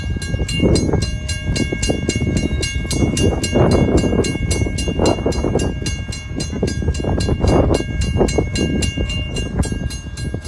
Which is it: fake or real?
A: real